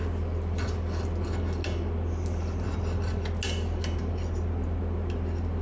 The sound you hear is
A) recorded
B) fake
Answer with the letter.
A